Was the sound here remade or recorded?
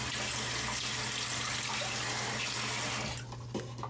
recorded